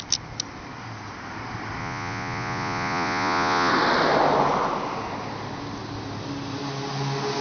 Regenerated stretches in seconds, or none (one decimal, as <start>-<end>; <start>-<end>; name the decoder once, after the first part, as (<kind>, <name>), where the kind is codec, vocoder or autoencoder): 1.8-3.7 (vocoder, Vocos)